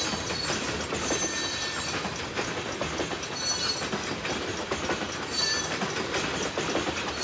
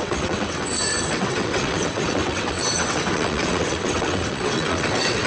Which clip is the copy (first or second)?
second